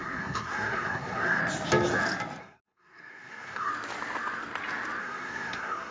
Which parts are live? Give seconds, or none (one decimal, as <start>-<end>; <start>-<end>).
1.4-2.4; 3.7-5.0